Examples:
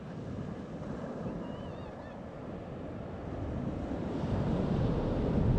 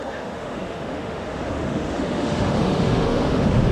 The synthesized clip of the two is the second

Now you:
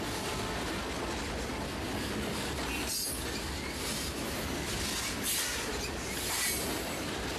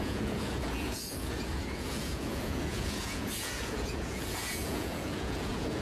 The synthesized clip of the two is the second